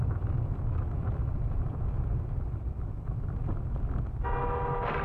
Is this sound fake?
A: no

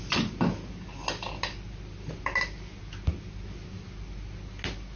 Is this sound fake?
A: no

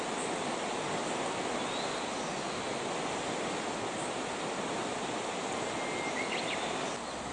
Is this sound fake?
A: no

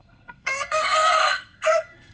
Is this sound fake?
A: yes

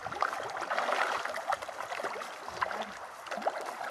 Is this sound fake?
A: no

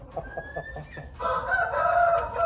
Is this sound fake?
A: no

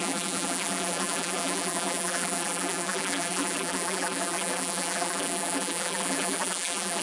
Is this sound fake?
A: yes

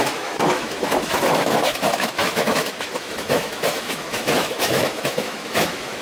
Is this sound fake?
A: yes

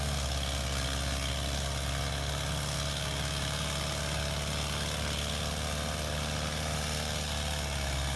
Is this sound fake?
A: no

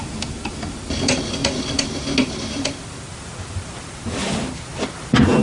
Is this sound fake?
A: no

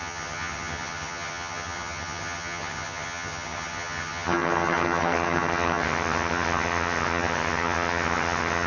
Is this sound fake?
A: yes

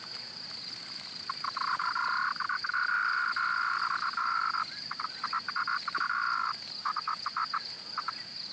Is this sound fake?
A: no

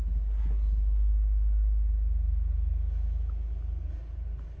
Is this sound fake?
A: no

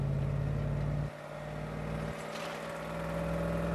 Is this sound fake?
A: no